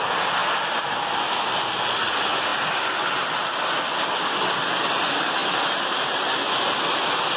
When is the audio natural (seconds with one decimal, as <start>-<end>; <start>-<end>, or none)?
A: 0.0-7.4